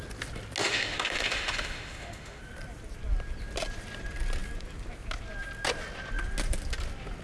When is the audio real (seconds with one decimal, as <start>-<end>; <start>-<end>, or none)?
0.0-0.6; 2.4-7.2